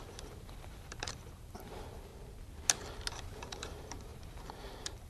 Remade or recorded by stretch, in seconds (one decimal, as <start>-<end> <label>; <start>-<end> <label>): 0.0-2.1 remade; 2.1-3.1 recorded; 3.1-5.1 remade